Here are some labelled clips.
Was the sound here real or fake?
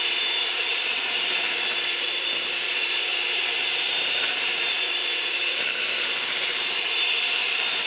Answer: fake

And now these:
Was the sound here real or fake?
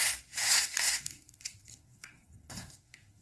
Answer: fake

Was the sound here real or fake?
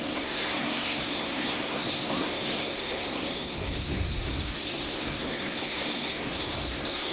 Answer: fake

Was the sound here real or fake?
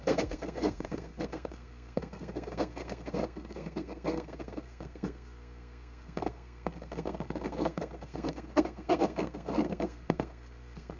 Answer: fake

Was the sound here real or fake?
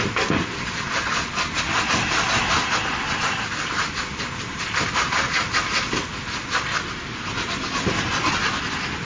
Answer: real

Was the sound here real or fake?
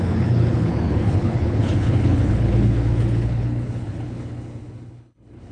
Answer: fake